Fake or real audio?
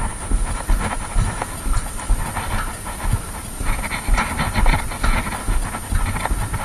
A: real